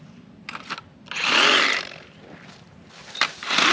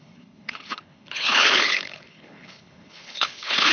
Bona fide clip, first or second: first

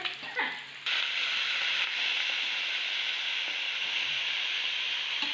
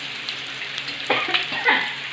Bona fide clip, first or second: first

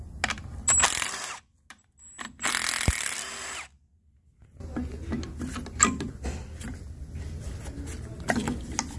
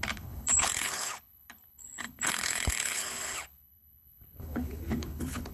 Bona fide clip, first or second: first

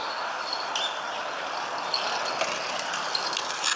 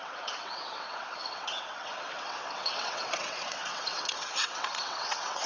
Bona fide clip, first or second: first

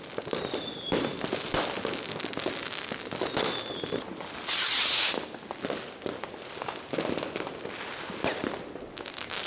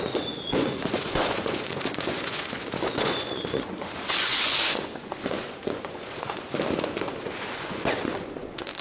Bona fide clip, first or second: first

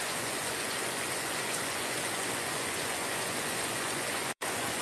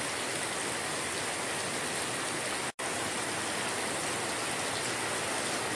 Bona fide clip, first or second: second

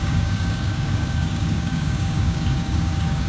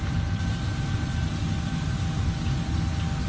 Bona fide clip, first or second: second